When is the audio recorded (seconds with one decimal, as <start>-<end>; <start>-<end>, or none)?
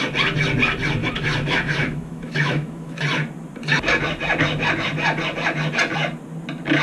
0.0-1.0; 3.0-6.8